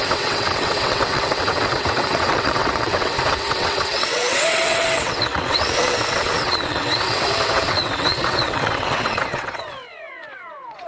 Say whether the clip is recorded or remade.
remade